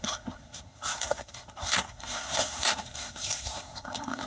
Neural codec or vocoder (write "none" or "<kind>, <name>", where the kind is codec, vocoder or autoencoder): codec, SNAC